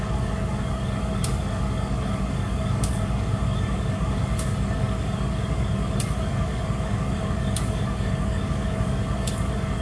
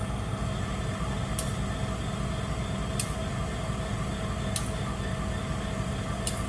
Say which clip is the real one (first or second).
second